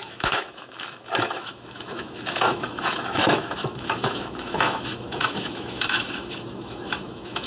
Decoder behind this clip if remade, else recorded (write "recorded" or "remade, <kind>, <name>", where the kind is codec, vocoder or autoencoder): remade, autoencoder, DAC-VAE